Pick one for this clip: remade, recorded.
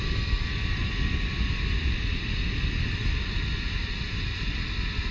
recorded